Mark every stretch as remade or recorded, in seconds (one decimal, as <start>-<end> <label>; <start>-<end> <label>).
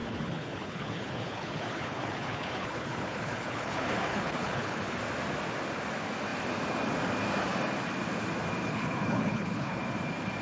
0.0-4.8 remade; 4.8-8.6 recorded; 8.6-9.8 remade; 9.8-10.4 recorded